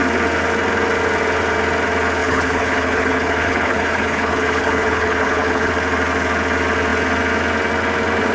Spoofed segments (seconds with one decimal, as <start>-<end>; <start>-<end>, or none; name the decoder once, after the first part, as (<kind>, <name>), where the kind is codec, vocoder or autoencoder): 2.2-5.7 (codec, HILCodec)